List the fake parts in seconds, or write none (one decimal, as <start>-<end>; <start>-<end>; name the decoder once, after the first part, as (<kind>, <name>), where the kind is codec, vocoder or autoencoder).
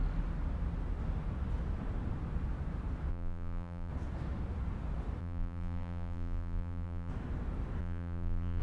3.1-3.9 (vocoder, BigVGAN v2); 5.2-7.1; 7.8-8.6